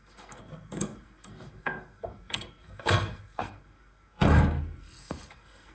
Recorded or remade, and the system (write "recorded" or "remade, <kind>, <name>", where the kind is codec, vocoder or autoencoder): remade, codec, SNAC